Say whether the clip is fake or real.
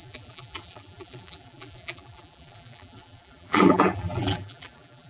fake